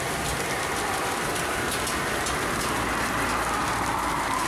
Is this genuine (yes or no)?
yes